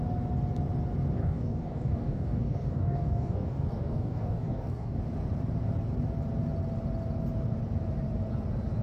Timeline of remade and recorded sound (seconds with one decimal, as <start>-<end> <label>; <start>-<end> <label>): 0.0-1.2 recorded; 1.2-5.0 remade; 5.0-8.8 recorded